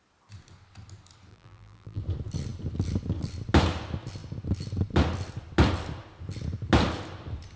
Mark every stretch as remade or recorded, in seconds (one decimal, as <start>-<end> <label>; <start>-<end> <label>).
0.0-1.3 recorded; 1.3-2.0 remade; 2.0-7.6 recorded